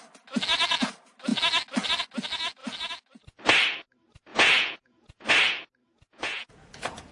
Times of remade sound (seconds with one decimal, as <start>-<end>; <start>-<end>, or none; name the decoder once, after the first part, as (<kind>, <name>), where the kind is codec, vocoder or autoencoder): 4.3-5.3 (vocoder, Vocos); 5.8-7.1

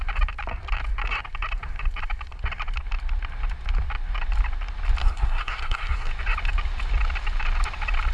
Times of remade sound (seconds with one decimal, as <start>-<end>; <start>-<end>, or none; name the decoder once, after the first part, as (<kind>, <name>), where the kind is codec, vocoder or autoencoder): 5.0-6.1 (codec, SNAC)

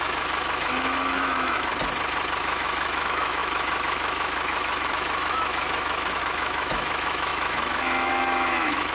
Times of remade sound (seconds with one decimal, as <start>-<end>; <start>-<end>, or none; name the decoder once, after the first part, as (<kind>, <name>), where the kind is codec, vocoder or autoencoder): 0.0-1.7 (autoencoder, DAC-VAE); 2.4-8.9

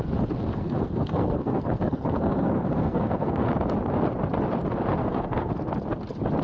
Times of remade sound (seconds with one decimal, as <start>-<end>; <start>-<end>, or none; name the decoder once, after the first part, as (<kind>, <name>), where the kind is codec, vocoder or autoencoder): 0.5-3.5 (codec, SNAC); 5.0-5.5

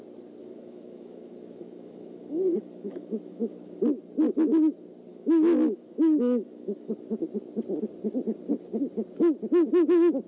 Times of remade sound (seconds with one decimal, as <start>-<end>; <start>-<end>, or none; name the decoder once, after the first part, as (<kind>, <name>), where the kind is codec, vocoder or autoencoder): 0.4-3.8 (autoencoder, DAC-VAE); 5.1-6.9